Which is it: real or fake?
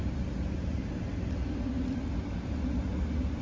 real